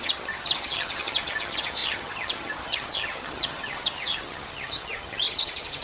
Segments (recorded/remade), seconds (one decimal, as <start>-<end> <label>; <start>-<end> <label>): 0.0-5.8 remade